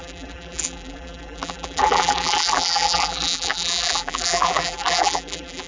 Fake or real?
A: fake